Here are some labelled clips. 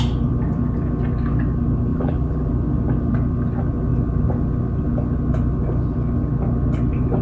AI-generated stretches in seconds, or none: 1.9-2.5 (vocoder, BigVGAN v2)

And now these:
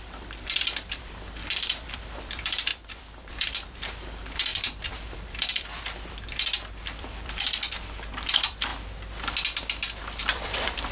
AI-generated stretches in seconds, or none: 0.0-8.7 (vocoder, BigVGAN v2); 10.2-10.9

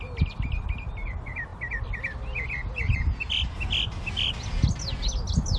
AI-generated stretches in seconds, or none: none

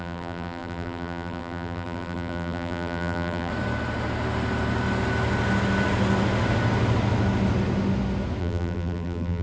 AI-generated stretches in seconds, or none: 0.0-3.5 (vocoder, BigVGAN v2); 8.4-9.4

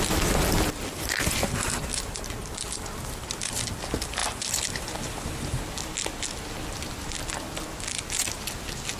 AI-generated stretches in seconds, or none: 2.4-3.4 (vocoder, BigVGAN v2)

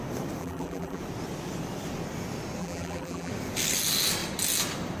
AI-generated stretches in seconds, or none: 0.4-1.0 (vocoder, BigVGAN v2); 2.6-3.3

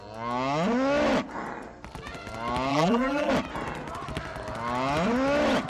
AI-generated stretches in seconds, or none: 2.7-3.3 (vocoder, BigVGAN v2)